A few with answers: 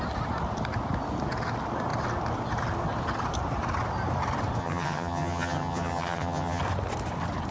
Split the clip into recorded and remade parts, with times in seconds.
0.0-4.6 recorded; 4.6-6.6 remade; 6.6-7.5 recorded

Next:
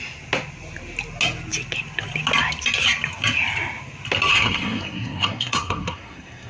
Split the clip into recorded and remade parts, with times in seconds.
0.0-4.3 recorded; 4.3-6.5 remade

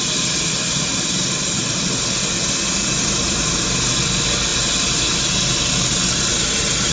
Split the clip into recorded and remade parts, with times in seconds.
0.0-6.9 recorded

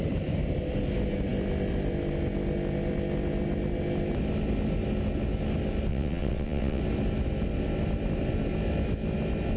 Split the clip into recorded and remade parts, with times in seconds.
0.0-5.9 recorded; 5.9-6.8 remade; 6.8-9.6 recorded

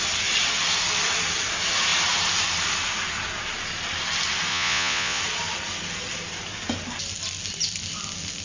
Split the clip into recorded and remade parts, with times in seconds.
0.0-4.5 recorded; 4.5-5.2 remade; 5.2-8.4 recorded